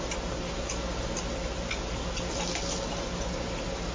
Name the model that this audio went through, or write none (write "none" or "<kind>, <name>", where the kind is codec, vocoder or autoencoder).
none